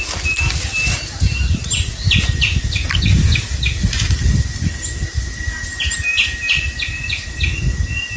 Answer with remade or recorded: recorded